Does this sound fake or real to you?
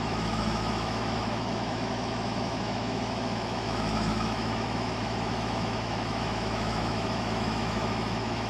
fake